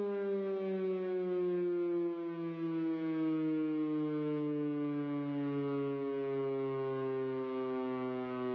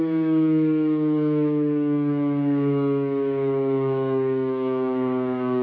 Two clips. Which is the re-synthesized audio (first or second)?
second